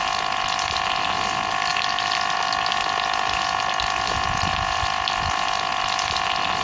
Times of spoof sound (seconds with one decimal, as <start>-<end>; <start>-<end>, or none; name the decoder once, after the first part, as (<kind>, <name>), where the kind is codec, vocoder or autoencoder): 1.7-5.7 (vocoder, BigVGAN v2)